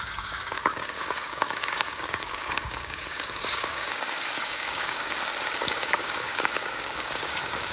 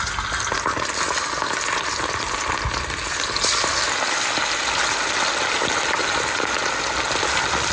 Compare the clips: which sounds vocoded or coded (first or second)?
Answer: first